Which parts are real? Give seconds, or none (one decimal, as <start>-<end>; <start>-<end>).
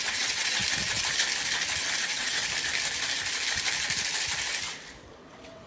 0.6-2.0; 2.4-5.3